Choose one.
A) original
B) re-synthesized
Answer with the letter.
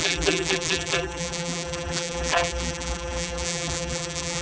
B